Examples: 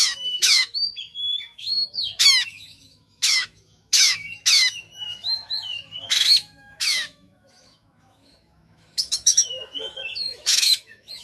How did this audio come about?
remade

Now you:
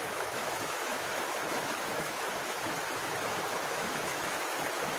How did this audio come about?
remade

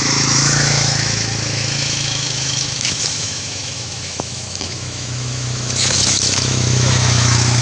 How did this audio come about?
remade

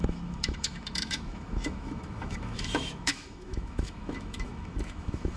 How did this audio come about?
remade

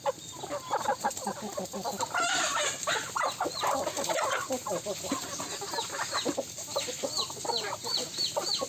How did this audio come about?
recorded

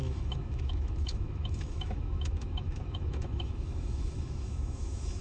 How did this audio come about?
remade